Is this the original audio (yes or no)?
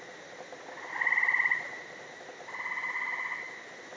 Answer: yes